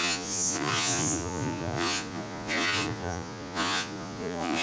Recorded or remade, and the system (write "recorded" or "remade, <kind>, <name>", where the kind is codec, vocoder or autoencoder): remade, vocoder, Vocos